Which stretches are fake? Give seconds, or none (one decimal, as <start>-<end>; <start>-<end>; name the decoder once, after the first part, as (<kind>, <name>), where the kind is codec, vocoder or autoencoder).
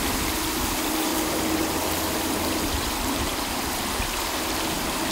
none